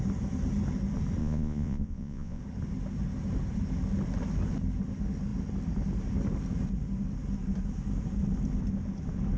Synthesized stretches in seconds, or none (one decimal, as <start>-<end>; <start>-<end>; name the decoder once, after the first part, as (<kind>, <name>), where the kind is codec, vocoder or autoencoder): 1.2-2.4 (vocoder, Vocos)